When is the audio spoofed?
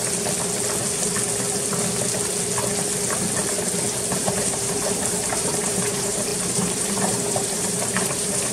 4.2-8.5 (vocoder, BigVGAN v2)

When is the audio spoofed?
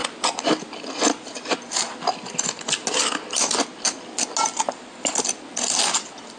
none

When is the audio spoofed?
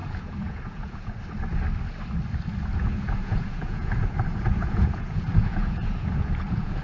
0.0-1.2 (vocoder, Vocos); 2.7-6.8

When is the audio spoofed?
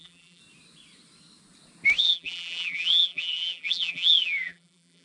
0.0-0.4 (vocoder, BigVGAN v2); 2.0-5.0